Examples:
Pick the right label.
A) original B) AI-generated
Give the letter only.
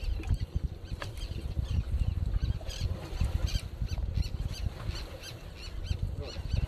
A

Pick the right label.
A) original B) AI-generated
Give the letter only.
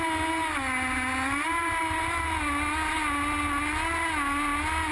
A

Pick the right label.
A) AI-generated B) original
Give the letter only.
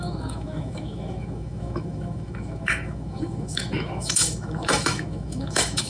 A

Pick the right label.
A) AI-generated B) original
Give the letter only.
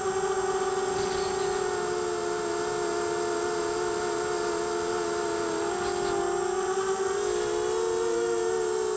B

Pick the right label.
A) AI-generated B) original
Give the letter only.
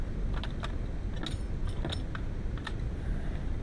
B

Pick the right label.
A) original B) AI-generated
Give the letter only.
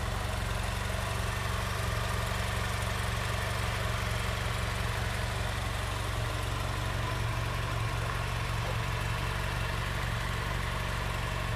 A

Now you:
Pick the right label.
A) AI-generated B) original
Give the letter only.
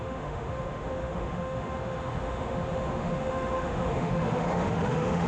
A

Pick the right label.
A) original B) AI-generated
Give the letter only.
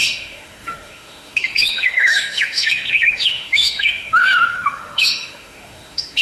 B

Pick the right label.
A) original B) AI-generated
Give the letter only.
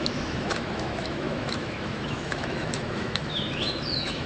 B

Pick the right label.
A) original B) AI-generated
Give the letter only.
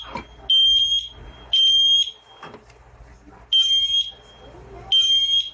A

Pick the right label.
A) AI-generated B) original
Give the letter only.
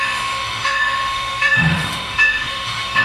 A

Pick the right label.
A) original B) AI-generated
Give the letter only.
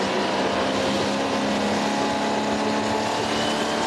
A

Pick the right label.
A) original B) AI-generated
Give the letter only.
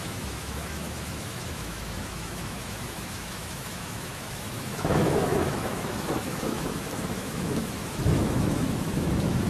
B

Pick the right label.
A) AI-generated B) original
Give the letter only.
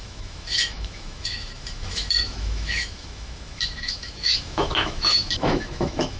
A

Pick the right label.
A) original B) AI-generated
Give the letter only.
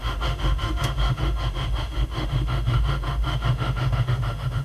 B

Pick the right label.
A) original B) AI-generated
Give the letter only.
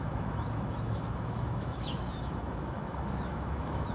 B